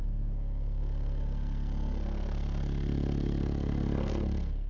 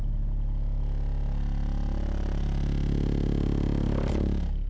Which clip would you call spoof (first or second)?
first